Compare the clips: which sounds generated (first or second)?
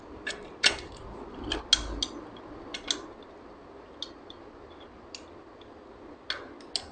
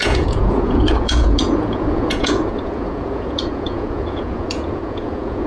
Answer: second